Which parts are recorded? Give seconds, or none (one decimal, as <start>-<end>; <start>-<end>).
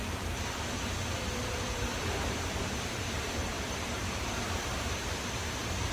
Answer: none